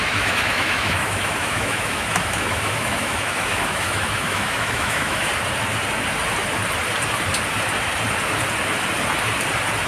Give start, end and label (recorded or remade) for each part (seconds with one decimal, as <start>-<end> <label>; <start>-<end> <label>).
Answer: 0.0-5.3 remade; 5.3-9.9 recorded